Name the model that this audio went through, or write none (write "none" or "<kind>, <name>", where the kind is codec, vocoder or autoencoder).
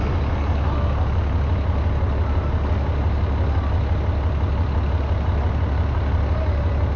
none